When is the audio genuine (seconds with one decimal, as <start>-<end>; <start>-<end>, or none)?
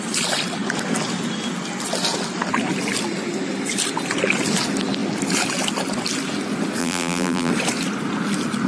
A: 0.0-6.8; 7.5-8.7